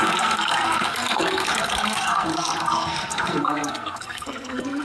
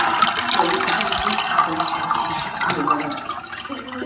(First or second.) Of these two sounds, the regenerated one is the first